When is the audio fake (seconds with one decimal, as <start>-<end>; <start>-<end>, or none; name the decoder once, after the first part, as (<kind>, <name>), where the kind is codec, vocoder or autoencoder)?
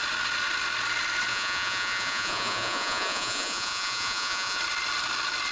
1.3-4.6 (vocoder, Vocos)